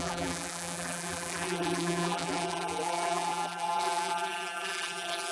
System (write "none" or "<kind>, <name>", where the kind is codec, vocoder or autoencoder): vocoder, BigVGAN v2